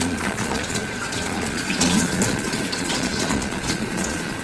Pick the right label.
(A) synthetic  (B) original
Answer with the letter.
A